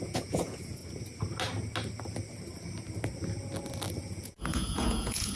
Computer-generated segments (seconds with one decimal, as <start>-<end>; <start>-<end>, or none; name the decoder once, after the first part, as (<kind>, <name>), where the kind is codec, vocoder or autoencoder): 0.0-0.8 (vocoder, Vocos); 4.0-5.4